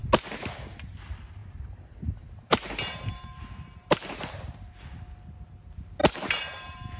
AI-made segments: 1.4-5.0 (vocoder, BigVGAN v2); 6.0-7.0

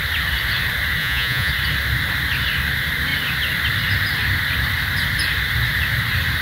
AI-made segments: 1.0-1.5 (vocoder, Vocos)

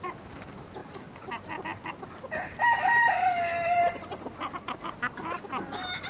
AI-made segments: none

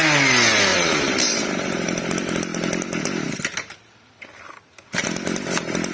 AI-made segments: 0.7-2.0 (vocoder, BigVGAN v2)

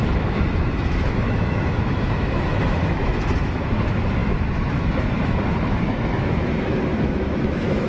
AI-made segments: 0.0-7.9 (autoencoder, DAC-VAE)

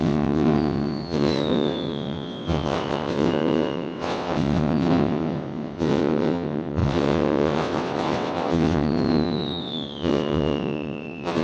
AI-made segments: 0.0-11.4 (vocoder, WaveNeXt)